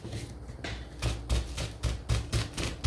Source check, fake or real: real